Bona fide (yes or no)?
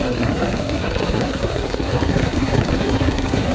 no